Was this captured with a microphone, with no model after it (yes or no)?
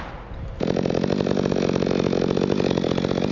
yes